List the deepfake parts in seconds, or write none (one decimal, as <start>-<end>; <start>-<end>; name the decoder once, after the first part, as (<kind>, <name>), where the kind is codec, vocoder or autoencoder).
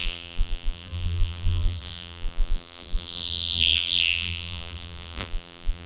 0.0-5.9 (vocoder, BigVGAN v2)